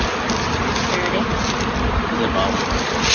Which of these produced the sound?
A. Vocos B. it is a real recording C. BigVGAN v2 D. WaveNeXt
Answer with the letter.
B